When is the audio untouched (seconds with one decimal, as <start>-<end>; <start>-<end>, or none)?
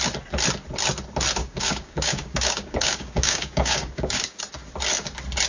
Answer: 0.0-1.4; 4.4-5.5